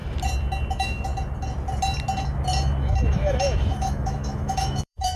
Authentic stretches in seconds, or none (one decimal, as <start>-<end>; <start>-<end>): 0.0-0.7; 1.1-2.8

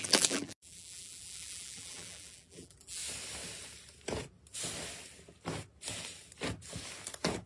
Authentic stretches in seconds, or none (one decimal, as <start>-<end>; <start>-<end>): 3.0-7.5

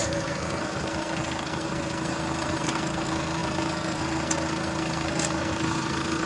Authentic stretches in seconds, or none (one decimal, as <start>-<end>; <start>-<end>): none

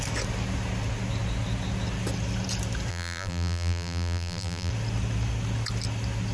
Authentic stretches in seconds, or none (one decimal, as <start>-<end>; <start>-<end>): 0.0-2.9; 4.7-6.3

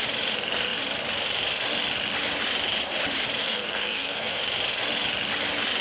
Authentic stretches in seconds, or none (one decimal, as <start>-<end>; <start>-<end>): 0.0-3.4; 4.4-5.8

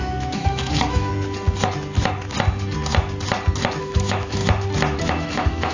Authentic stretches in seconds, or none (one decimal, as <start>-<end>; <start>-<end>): 1.1-3.8; 4.4-5.0

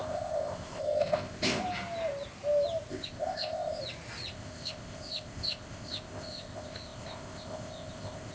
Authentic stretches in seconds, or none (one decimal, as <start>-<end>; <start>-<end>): 1.6-2.9; 3.8-4.3

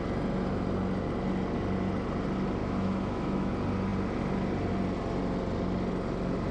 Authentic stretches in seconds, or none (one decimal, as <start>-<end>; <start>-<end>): 0.0-2.6; 3.5-6.5